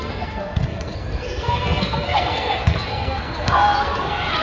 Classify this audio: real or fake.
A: fake